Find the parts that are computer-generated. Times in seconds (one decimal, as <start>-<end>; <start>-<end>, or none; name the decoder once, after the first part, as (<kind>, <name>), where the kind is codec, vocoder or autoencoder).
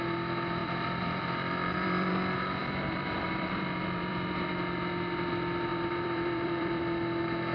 0.6-2.1 (vocoder, BigVGAN v2); 2.6-4.5; 5.7-6.8